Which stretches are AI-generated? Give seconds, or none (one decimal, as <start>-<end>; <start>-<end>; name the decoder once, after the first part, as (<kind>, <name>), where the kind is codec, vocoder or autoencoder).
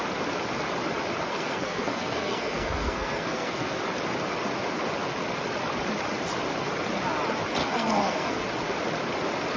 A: 1.3-3.8 (codec, SNAC); 7.6-8.4